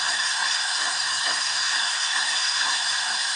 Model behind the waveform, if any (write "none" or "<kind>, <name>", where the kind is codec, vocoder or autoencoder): codec, SNAC